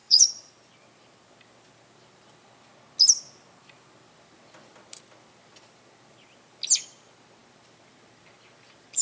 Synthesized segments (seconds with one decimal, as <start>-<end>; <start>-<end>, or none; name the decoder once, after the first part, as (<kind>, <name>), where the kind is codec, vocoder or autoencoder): 0.0-0.5 (vocoder, Vocos)